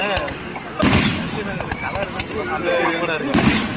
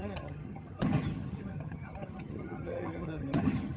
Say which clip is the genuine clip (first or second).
first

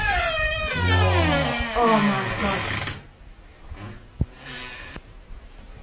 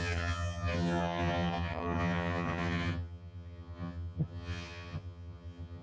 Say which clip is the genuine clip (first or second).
first